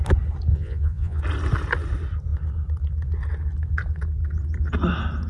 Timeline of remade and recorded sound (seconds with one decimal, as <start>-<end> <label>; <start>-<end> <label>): 0.0-0.5 recorded; 0.5-1.2 remade; 1.2-5.3 recorded